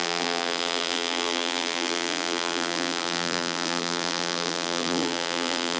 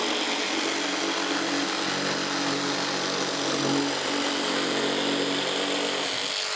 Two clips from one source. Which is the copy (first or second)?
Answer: first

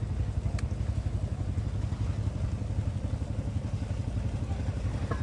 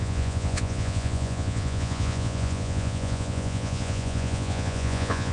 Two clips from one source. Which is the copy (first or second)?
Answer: second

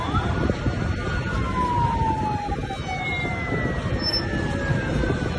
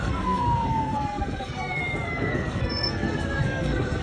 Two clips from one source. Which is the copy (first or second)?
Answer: second